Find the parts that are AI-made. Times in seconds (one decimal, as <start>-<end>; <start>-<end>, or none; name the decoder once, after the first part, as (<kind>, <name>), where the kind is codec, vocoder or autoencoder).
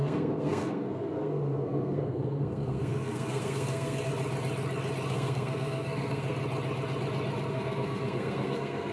0.0-4.1 (codec, SNAC); 5.1-6.4; 7.5-8.9